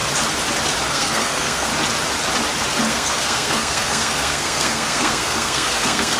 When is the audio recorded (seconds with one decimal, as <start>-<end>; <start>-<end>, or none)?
0.0-0.9; 1.7-2.9